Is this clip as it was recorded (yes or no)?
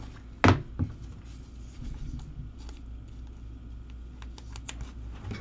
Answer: yes